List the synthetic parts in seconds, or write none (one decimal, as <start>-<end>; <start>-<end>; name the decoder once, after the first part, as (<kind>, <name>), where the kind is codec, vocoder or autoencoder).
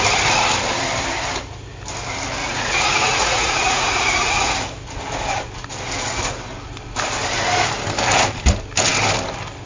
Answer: 2.4-4.5 (vocoder, Vocos)